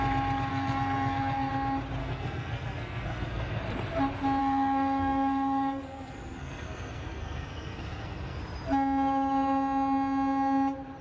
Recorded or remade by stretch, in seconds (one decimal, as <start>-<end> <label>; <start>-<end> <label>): 0.0-0.5 recorded; 0.5-1.5 remade; 1.5-2.0 recorded; 2.0-3.6 remade; 3.6-4.4 recorded; 4.4-8.4 remade; 8.4-11.0 recorded